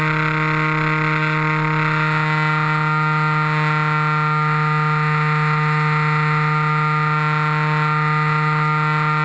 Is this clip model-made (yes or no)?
no